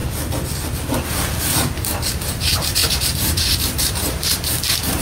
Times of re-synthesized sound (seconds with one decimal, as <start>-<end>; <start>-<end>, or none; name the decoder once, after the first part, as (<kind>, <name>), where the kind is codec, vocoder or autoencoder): 1.4-5.0 (vocoder, BigVGAN v2)

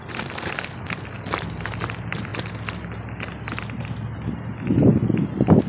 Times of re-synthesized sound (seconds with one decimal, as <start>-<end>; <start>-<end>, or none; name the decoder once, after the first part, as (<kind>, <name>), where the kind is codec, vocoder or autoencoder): none

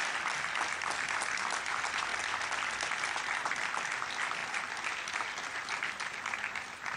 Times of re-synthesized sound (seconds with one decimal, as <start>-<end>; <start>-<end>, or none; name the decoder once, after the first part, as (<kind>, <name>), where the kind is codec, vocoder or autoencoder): 0.7-2.1 (vocoder, BigVGAN v2); 3.2-4.4; 6.2-7.0

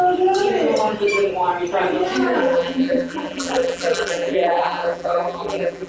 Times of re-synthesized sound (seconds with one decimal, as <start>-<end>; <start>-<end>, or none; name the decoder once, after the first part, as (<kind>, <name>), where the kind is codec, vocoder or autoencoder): 2.4-5.9 (vocoder, BigVGAN v2)

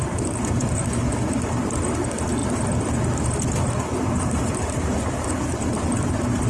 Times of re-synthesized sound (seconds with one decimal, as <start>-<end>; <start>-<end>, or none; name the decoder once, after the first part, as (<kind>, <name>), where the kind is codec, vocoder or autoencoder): 2.4-6.5 (vocoder, BigVGAN v2)